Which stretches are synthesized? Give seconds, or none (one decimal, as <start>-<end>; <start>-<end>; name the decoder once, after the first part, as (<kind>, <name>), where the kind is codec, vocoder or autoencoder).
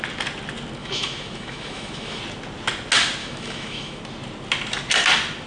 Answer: 0.8-2.2 (autoencoder, DAC-VAE); 3.2-4.0